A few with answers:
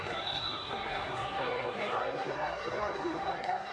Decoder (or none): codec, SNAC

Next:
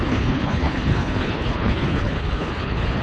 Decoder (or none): codec, HILCodec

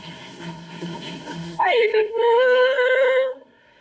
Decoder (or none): codec, SNAC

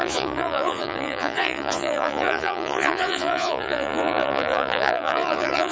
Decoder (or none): vocoder, Vocos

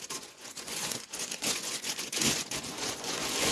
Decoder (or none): vocoder, Vocos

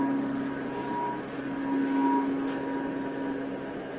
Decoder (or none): none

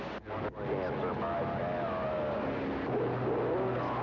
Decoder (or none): none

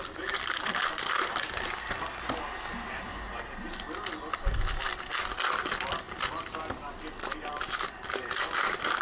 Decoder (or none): none